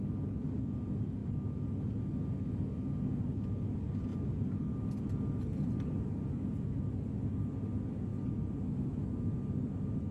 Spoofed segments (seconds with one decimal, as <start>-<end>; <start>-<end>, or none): 1.2-2.1; 4.1-5.0